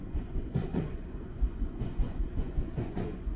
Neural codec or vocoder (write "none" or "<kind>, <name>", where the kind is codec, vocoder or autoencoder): vocoder, Vocos